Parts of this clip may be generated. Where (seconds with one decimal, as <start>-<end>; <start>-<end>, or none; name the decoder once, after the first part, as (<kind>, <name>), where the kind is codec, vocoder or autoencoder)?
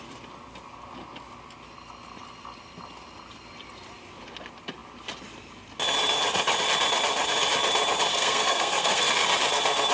8.1-9.0 (codec, SNAC)